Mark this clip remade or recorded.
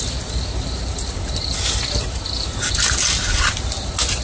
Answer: recorded